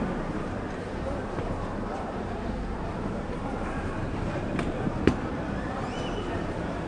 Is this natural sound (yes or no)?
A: no